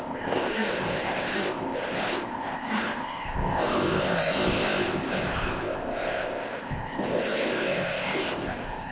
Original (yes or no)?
no